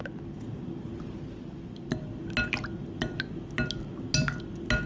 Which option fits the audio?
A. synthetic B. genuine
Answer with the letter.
B